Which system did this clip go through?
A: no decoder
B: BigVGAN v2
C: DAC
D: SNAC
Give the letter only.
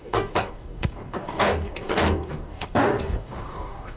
C